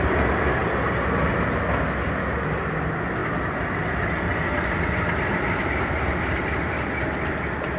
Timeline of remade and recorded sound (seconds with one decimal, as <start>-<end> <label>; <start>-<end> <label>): 0.0-7.8 recorded